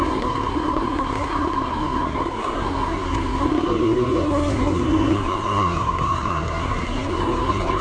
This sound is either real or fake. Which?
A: fake